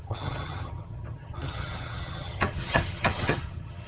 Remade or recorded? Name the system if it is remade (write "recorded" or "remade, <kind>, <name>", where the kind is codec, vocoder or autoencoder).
remade, vocoder, HiFi-GAN